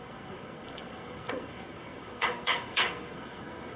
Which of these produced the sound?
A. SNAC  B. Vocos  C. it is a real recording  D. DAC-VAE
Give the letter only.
A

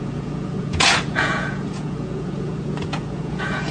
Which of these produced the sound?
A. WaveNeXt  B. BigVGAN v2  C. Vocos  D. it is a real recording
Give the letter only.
C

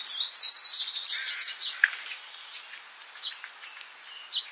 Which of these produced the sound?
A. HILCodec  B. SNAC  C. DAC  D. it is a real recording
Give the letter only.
D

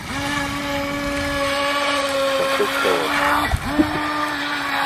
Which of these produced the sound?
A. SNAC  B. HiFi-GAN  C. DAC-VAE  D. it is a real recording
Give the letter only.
D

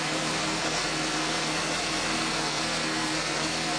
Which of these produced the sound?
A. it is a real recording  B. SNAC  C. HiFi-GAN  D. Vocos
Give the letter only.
B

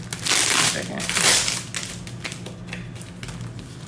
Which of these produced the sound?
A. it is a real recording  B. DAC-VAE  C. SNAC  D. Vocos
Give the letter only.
A